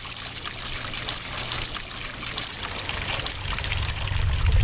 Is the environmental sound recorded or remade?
recorded